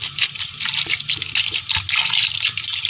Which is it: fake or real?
real